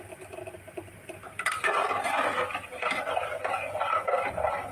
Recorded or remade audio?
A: recorded